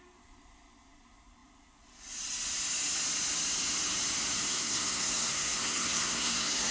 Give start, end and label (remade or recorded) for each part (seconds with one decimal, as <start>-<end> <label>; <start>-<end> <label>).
0.0-4.5 recorded; 4.5-6.7 remade